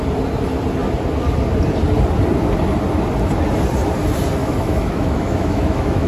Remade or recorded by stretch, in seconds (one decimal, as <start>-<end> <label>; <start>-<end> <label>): 0.0-4.4 recorded; 4.4-6.1 remade